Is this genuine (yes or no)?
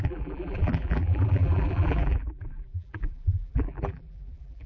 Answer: no